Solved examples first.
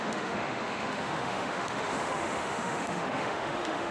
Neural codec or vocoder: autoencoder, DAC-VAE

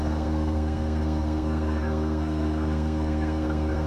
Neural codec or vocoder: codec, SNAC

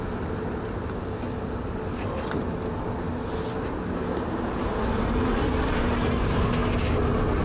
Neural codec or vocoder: none